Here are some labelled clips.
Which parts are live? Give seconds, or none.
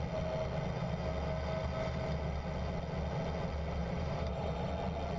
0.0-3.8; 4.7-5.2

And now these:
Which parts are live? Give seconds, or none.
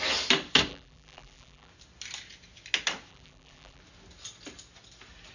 0.0-0.7; 1.7-3.1; 3.8-5.3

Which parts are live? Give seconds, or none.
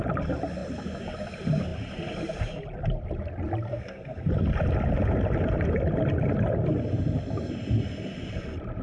0.0-3.7; 4.2-8.8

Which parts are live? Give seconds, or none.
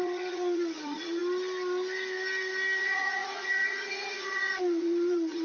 1.2-2.8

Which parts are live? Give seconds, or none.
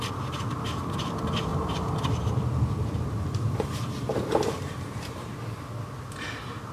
0.0-1.5; 4.8-6.7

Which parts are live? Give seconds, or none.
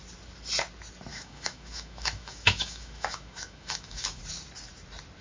0.0-1.1; 4.2-5.2